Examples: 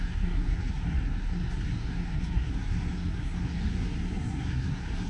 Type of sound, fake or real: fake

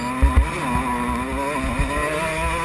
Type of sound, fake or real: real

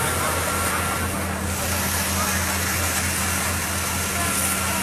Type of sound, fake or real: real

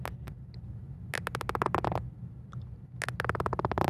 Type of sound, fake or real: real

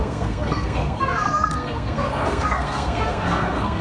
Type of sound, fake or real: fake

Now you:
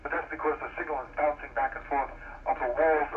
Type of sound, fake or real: real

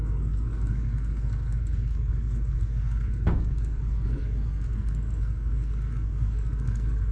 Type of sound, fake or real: fake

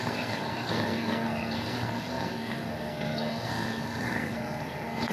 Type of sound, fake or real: fake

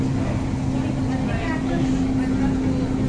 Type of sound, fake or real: real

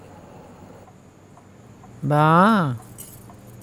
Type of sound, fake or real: real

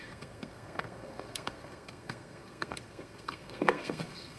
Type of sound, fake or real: fake